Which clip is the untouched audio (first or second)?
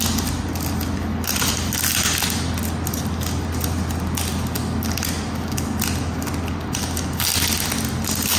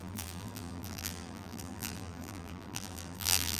first